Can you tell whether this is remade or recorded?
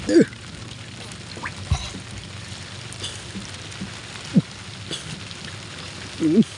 recorded